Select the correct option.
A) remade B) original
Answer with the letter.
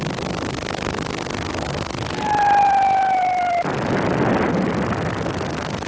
B